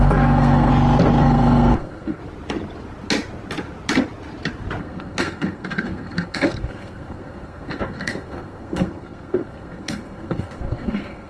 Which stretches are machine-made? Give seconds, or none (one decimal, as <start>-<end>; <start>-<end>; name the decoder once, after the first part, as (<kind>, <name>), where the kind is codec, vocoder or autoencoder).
0.0-0.7 (codec, SNAC); 1.2-2.2; 4.8-11.3